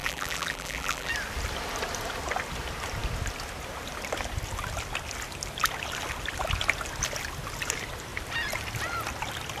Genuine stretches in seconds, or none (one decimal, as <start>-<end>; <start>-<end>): 1.1-9.6

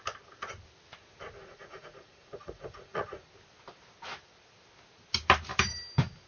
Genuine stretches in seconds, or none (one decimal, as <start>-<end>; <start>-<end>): 0.0-1.4; 3.3-6.3

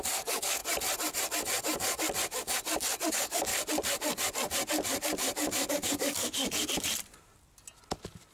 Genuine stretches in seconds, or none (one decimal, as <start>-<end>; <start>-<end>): 0.6-3.1; 3.5-5.7; 6.4-8.3

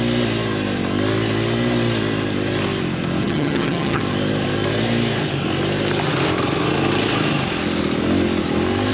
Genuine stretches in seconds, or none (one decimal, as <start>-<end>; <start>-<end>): 0.0-3.2; 4.0-8.9

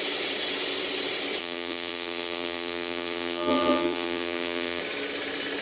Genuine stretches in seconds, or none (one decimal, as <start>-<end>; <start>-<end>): 0.0-1.4; 4.8-5.6

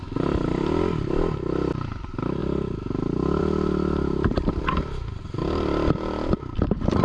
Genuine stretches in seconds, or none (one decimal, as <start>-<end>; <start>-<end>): 0.0-7.0